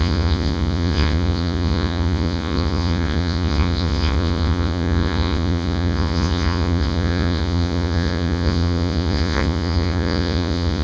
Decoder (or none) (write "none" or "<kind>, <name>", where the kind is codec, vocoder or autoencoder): vocoder, Vocos